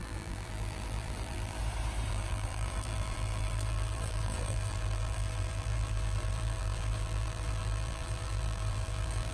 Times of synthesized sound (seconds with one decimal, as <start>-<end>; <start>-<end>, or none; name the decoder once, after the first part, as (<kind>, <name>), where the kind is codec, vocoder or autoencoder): 0.0-1.6 (vocoder, BigVGAN v2); 2.1-9.3

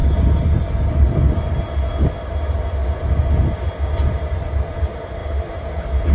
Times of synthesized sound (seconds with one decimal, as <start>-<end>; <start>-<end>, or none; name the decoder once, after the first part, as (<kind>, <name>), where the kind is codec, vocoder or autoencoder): 5.2-6.1 (vocoder, BigVGAN v2)

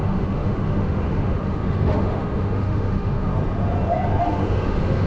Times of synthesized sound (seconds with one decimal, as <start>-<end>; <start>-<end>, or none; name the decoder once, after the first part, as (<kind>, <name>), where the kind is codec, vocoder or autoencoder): 0.0-3.3 (autoencoder, DAC-VAE); 4.2-5.1

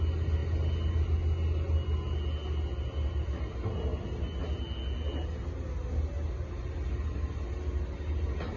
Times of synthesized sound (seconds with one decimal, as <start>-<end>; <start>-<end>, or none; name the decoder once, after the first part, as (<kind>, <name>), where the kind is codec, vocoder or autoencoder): none

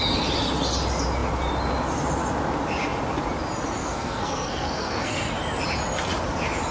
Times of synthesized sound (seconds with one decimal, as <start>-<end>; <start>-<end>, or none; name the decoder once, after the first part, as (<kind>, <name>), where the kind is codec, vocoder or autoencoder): 3.8-5.3 (codec, SNAC)

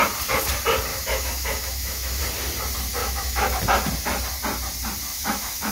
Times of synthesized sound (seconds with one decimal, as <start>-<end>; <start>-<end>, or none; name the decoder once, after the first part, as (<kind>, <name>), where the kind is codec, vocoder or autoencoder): 0.9-2.2 (autoencoder, DAC-VAE); 3.0-3.6; 5.1-5.7